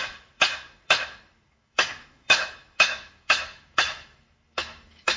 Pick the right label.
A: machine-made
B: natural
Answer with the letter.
A